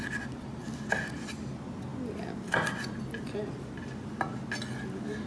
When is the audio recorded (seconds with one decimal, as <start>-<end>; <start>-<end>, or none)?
0.0-5.3